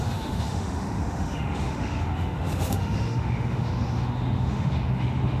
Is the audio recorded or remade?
remade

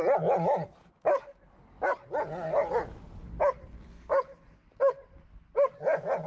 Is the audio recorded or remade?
recorded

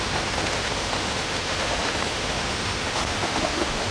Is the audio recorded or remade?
remade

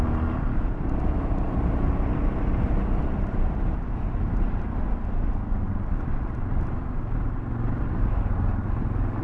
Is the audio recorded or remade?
recorded